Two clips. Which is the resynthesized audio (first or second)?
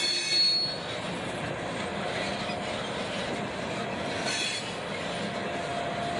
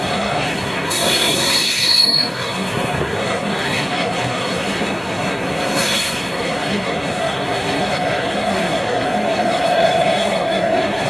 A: second